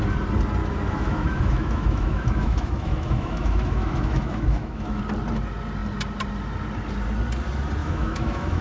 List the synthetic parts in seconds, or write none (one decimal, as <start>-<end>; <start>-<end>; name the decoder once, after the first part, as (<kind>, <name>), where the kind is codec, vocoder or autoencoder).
0.6-5.0 (autoencoder, DAC-VAE); 7.8-8.6